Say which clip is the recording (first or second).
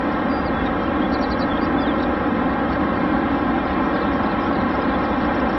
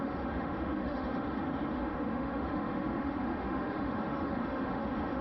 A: first